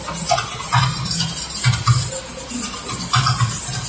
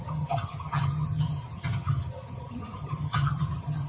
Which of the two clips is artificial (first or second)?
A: second